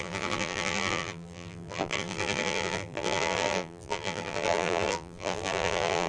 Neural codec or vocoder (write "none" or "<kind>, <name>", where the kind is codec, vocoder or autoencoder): vocoder, BigVGAN v2